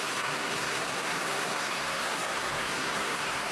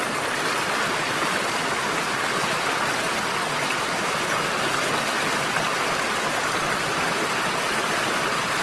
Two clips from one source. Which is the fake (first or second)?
first